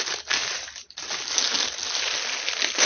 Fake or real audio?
real